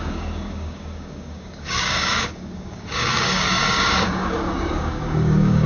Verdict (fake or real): fake